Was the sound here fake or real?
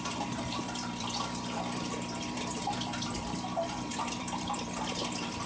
fake